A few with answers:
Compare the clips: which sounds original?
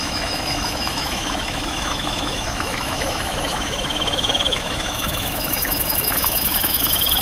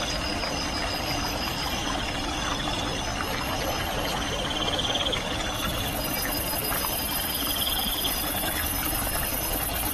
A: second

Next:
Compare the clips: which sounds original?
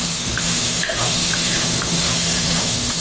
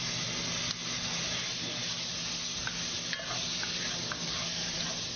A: second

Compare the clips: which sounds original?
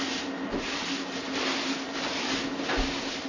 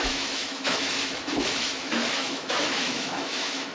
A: first